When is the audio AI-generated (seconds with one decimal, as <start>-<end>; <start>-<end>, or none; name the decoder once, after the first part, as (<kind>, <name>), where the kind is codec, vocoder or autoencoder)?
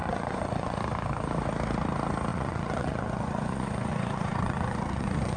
0.0-0.8 (vocoder, Vocos); 2.3-5.4